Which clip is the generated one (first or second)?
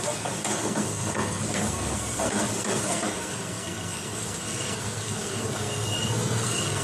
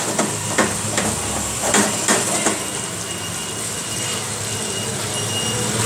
first